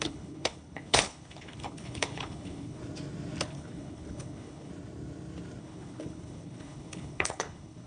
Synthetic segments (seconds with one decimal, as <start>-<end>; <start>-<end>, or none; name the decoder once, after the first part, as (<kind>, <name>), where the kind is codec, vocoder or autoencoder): 0.0-2.8 (codec, HILCodec); 3.4-4.7; 5.6-7.9

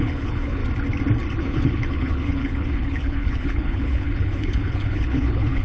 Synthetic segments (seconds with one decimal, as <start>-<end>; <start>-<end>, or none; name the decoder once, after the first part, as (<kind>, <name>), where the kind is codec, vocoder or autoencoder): 0.0-0.6 (codec, HILCodec); 1.4-5.6

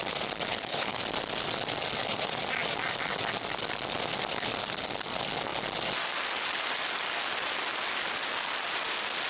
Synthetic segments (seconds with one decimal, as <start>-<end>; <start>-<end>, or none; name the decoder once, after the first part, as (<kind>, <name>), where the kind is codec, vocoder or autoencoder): 0.5-1.0 (codec, HILCodec)